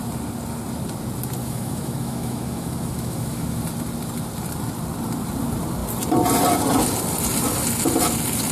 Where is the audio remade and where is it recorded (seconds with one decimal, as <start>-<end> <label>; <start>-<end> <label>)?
0.0-1.4 recorded; 1.4-3.6 remade; 3.6-8.5 recorded